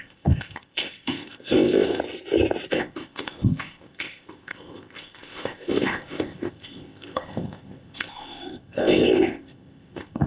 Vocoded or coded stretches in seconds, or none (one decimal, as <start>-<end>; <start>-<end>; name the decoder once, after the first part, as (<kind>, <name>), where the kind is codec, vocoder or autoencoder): 0.0-2.0 (codec, ZipCodec); 2.7-10.3